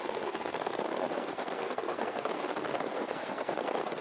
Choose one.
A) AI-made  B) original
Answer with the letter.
A